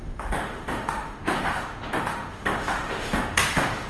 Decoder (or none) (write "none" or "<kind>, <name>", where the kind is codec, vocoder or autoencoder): autoencoder, DAC-VAE